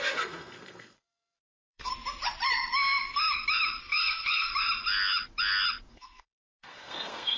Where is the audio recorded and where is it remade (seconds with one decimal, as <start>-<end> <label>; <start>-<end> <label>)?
0.0-1.9 remade; 1.9-3.8 recorded; 3.8-4.5 remade; 4.5-5.9 recorded; 5.9-7.4 remade